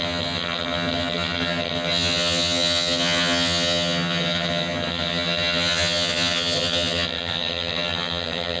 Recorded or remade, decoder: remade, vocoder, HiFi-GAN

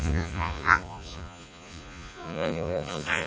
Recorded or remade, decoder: remade, vocoder, Vocos